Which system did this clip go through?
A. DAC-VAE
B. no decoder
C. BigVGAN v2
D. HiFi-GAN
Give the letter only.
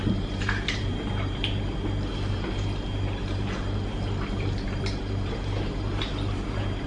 C